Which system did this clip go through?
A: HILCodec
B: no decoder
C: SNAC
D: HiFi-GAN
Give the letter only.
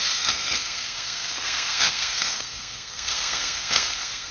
C